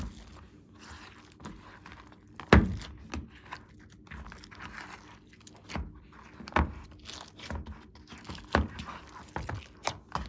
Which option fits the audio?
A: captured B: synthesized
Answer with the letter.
A